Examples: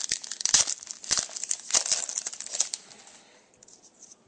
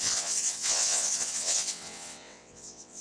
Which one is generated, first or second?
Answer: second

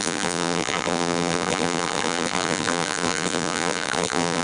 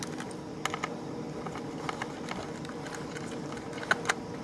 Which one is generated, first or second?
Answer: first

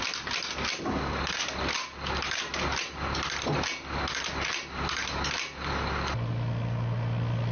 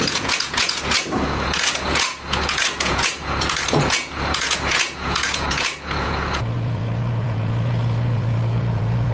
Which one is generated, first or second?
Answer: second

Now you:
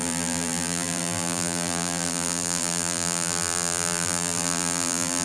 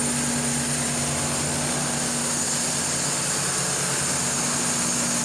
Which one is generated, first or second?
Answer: first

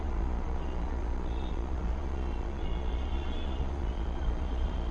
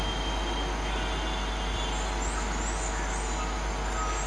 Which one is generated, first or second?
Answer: first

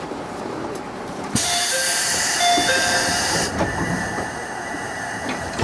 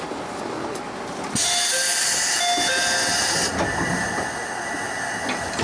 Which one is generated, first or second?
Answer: first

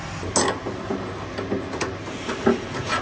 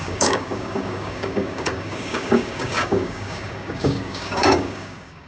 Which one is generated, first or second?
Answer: second